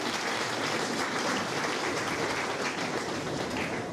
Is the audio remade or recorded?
remade